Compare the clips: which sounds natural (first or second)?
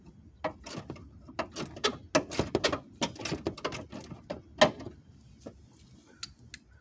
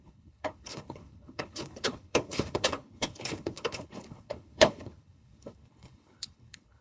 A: first